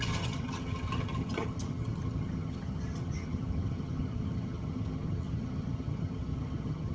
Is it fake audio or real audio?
fake